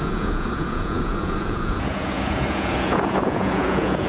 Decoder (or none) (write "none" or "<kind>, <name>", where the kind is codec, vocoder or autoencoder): vocoder, Vocos